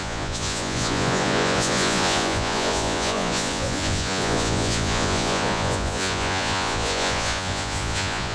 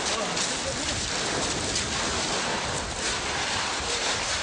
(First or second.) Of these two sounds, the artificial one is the first